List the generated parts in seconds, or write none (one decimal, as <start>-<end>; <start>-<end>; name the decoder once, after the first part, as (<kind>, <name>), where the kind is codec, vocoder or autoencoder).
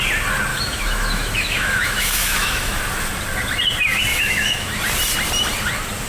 0.5-2.8 (autoencoder, DAC-VAE); 4.1-4.8